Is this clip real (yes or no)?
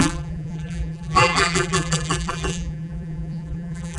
no